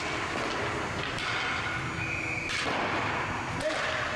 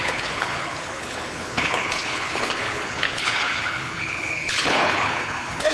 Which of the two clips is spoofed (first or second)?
second